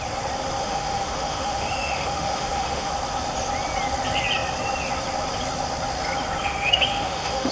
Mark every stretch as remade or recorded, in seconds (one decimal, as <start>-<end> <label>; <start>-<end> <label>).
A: 0.0-0.6 recorded; 0.6-2.9 remade; 2.9-6.4 recorded; 6.4-7.5 remade